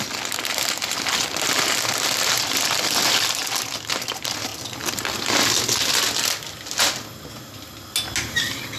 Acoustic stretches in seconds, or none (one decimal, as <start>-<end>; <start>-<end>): 0.0-8.8